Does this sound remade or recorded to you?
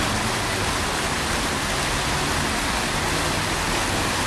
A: recorded